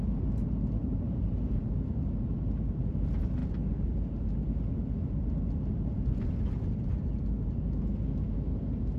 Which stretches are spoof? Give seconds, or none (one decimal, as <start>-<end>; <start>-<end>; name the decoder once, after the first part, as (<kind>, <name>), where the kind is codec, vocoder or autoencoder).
0.8-1.6 (vocoder, BigVGAN v2)